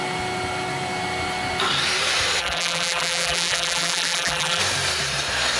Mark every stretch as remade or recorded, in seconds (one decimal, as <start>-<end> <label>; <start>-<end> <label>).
0.0-2.4 recorded; 2.4-4.6 remade; 4.6-5.6 recorded

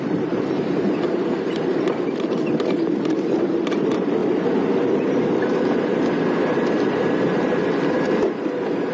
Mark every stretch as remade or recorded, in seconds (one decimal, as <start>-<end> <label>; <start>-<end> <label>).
0.0-4.2 remade; 4.2-4.9 recorded; 4.9-8.9 remade

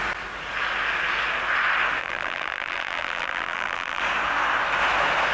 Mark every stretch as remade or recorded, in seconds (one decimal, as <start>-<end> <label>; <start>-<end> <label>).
0.0-2.0 recorded; 2.0-4.0 remade; 4.0-5.3 recorded

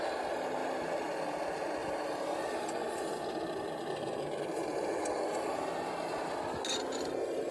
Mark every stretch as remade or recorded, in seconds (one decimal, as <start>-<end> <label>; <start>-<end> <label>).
0.0-0.6 recorded; 0.6-1.4 remade; 1.4-1.8 recorded; 1.8-2.4 remade; 2.4-7.5 recorded

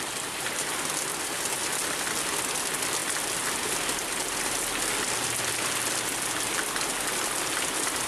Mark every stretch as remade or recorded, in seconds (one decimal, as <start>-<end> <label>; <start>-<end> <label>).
0.0-8.1 recorded